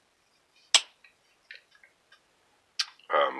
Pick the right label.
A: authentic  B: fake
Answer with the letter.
A